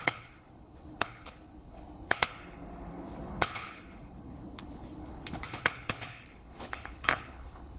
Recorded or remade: remade